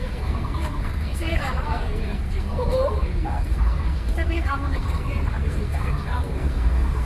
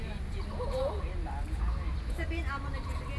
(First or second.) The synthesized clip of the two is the first